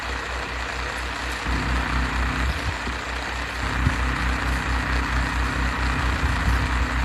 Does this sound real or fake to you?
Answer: real